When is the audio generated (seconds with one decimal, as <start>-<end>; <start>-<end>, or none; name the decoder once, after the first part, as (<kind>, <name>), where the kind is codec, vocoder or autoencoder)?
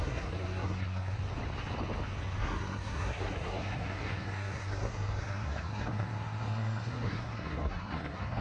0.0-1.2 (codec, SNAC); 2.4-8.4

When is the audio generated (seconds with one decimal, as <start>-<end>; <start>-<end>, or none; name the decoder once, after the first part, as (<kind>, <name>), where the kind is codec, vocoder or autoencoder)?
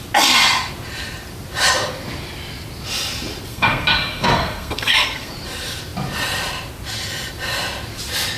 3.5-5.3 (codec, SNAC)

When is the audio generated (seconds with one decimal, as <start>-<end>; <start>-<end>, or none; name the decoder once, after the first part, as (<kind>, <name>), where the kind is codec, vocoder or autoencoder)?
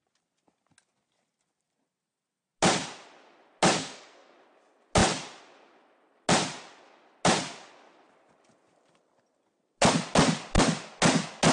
3.8-4.3 (codec, SNAC)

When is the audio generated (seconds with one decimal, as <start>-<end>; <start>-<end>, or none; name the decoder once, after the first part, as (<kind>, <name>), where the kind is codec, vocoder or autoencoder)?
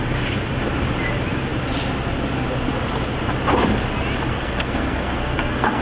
4.3-5.8 (codec, SNAC)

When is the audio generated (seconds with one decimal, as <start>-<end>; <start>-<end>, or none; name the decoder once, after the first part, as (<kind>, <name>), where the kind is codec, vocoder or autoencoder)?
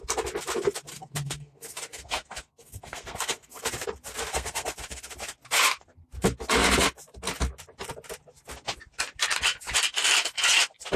0.9-3.6 (codec, SNAC); 4.3-5.1